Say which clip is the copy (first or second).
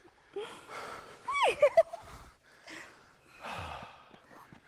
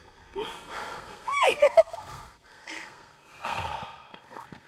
second